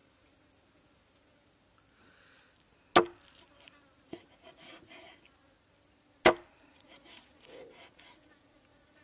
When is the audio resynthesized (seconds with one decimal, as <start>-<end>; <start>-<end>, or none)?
4.0-5.1; 6.6-9.0